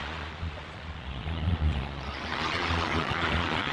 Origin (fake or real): fake